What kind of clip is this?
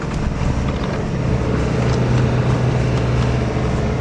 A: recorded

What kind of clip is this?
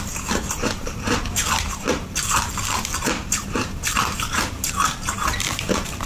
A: remade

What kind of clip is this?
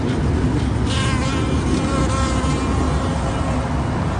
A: recorded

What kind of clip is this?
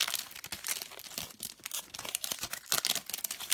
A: recorded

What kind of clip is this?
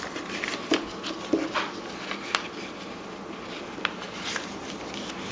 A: recorded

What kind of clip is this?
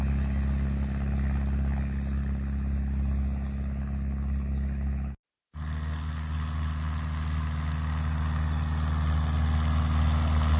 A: recorded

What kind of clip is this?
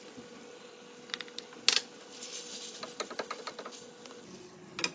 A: recorded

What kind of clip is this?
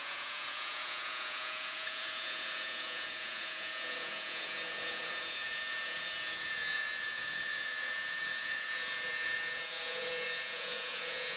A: remade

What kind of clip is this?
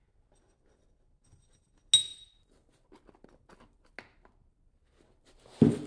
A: recorded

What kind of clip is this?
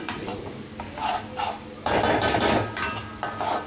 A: recorded